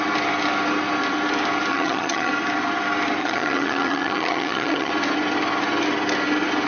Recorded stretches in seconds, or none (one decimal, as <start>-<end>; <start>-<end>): 0.0-1.7; 2.3-3.2; 4.9-6.7